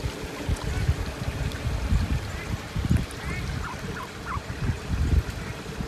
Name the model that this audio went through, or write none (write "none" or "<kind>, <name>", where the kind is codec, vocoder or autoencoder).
vocoder, BigVGAN v2